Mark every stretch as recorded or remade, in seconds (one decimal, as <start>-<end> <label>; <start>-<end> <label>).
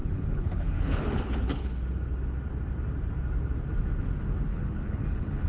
0.0-1.8 remade; 1.8-4.5 recorded; 4.5-5.5 remade